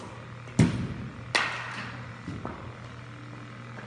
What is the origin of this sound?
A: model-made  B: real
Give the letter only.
B